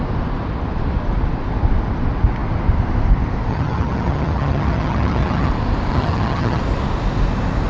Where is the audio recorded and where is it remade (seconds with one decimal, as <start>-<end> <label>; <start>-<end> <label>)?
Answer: 0.0-3.5 recorded; 3.5-5.5 remade; 5.5-5.9 recorded; 5.9-6.6 remade; 6.6-7.7 recorded